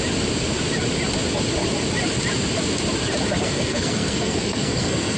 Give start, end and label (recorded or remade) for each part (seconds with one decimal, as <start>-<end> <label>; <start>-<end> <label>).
0.0-3.4 recorded; 3.4-5.2 remade